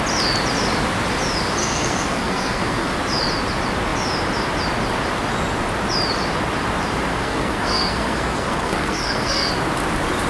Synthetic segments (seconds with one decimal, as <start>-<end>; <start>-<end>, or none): 1.6-2.9; 7.1-9.5